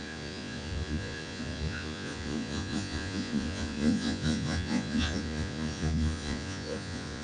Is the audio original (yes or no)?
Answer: no